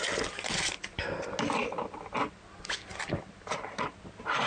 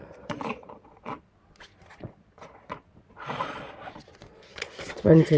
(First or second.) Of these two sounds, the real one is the first